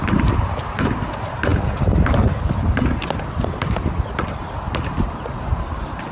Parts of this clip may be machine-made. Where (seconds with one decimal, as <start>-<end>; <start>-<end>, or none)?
none